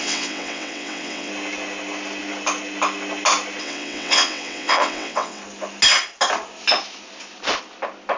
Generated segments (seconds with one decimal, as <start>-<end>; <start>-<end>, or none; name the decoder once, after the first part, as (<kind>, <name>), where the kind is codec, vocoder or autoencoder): 0.0-1.3 (vocoder, WaveNeXt); 3.6-5.4